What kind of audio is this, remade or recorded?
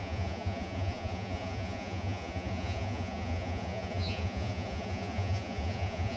remade